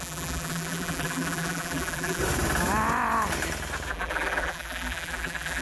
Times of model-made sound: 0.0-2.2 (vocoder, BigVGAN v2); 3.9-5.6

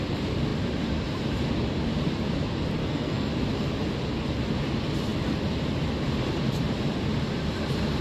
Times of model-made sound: 2.8-3.3 (codec, SNAC)

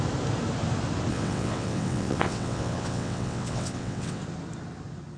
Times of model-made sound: 1.1-4.2 (vocoder, WaveNeXt)

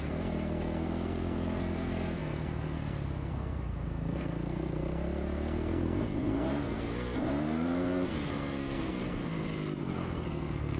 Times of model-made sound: 0.0-9.2 (codec, SNAC); 9.8-10.8

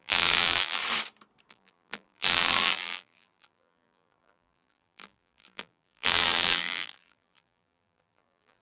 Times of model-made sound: 0.0-0.8 (vocoder, BigVGAN v2); 1.5-8.6

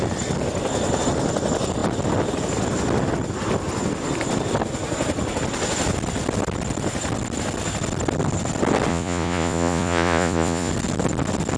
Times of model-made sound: 8.9-10.7 (vocoder, Vocos)

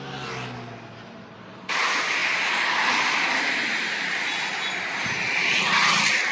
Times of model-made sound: none

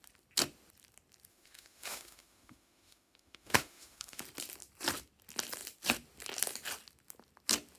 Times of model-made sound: 1.3-4.2 (autoencoder, DAC-VAE)